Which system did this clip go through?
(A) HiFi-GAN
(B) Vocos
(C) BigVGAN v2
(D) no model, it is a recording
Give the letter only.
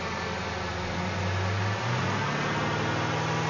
D